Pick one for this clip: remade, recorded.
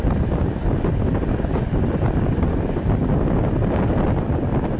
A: recorded